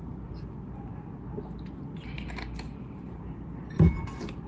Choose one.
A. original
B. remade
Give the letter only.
A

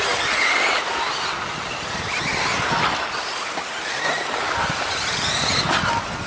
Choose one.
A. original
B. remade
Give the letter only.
A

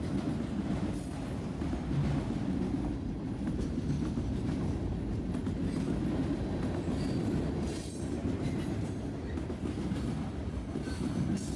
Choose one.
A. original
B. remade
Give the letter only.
A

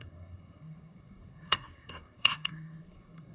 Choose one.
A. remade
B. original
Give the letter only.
A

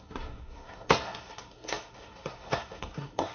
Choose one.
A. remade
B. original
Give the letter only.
A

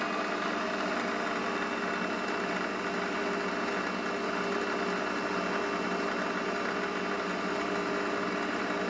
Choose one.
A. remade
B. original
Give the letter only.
B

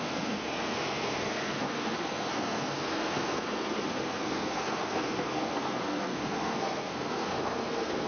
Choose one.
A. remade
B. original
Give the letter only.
A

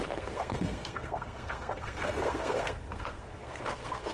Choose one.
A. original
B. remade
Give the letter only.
B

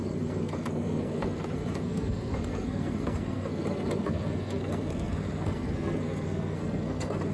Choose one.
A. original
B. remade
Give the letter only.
B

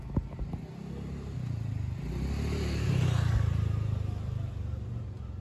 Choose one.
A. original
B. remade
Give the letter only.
A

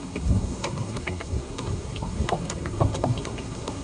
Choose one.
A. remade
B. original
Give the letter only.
A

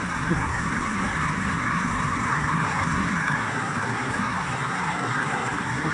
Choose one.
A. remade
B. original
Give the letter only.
A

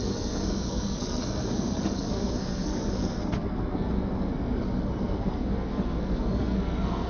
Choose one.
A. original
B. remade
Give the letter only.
B